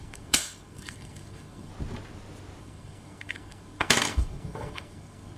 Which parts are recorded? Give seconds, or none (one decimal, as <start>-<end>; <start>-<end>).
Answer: 1.7-2.6